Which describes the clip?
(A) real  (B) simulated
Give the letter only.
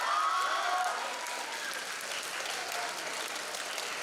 A